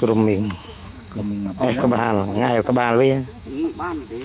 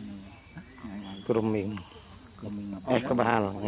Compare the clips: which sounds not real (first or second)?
first